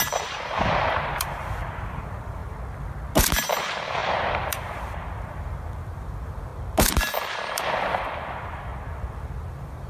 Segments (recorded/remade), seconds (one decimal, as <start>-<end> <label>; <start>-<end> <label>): 0.0-2.4 remade; 2.4-3.3 recorded; 3.3-6.5 remade; 6.5-7.3 recorded; 7.3-8.7 remade; 8.7-9.5 recorded; 9.5-9.9 remade